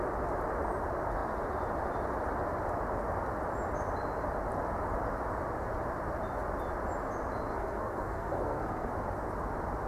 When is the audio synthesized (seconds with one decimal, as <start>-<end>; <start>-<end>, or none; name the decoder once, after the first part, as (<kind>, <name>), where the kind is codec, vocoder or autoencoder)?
7.5-8.9 (codec, SNAC)